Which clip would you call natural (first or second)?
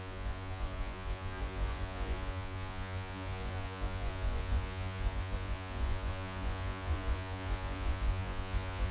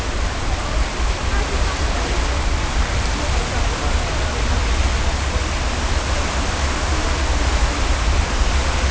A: second